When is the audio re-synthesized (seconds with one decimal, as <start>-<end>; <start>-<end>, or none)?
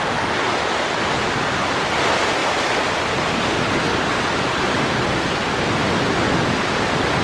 none